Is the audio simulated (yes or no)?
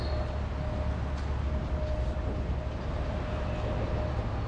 no